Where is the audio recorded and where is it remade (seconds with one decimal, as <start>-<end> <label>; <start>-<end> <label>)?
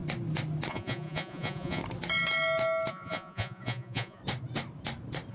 0.0-0.7 recorded; 0.7-1.8 remade; 1.8-2.9 recorded; 2.9-4.2 remade; 4.2-5.3 recorded